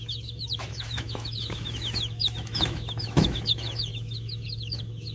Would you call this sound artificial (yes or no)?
yes